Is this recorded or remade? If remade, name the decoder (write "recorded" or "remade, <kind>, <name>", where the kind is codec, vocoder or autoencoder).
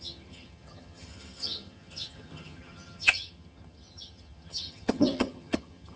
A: remade, vocoder, HiFi-GAN